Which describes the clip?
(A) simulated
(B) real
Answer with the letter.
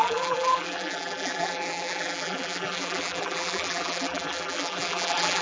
A